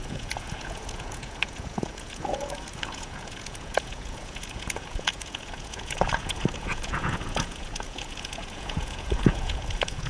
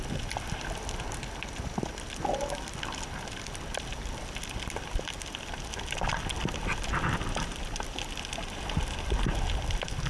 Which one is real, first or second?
second